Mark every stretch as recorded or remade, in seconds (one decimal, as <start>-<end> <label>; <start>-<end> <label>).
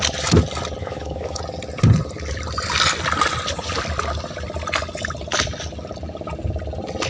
0.0-0.8 recorded; 0.8-1.4 remade; 1.4-7.1 recorded